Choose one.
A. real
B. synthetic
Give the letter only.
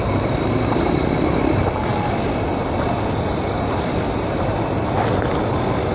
A